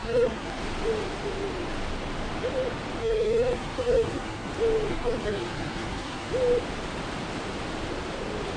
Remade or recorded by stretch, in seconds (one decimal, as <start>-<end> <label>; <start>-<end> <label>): 0.0-0.6 remade; 0.6-3.0 recorded; 3.0-4.5 remade; 4.5-4.9 recorded; 4.9-6.3 remade; 6.3-8.6 recorded